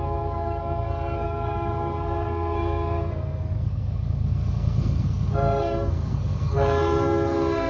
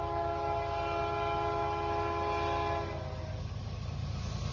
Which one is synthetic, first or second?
first